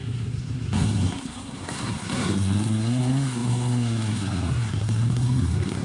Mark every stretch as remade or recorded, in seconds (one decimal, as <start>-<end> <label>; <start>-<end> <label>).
0.0-5.8 remade

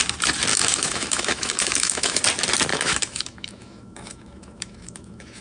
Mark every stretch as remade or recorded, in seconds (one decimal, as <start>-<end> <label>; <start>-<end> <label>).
0.0-0.5 recorded; 0.5-2.2 remade; 2.2-2.7 recorded; 2.7-5.4 remade

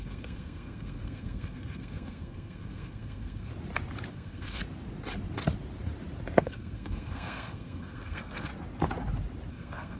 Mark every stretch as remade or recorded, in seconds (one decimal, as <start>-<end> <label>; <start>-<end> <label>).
0.0-3.5 remade; 3.5-4.1 recorded; 4.1-4.6 remade; 4.6-6.4 recorded; 6.4-8.5 remade; 8.5-9.5 recorded; 9.5-10.0 remade

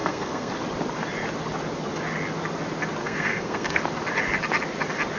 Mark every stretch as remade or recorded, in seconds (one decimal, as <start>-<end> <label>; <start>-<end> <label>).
0.0-0.5 remade; 0.5-3.0 recorded; 3.0-3.8 remade; 3.8-5.2 recorded